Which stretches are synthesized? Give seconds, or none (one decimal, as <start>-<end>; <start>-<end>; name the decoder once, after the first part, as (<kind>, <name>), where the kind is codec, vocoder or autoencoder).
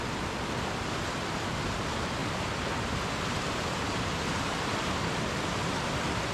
none